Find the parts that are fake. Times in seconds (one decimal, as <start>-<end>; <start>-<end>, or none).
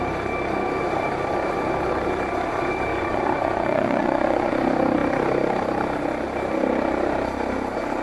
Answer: 2.9-4.5